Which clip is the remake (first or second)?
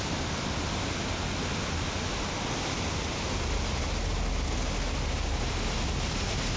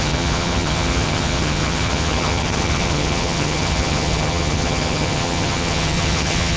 second